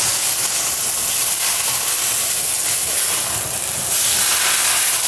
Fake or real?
real